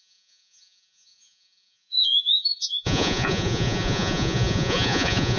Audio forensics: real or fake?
fake